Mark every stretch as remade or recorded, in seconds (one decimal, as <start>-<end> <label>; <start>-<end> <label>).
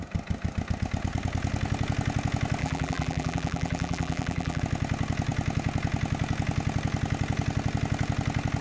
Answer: 0.0-2.6 recorded; 2.6-4.6 remade; 4.6-8.6 recorded